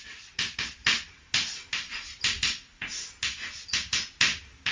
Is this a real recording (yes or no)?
yes